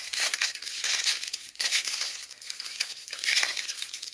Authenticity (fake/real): fake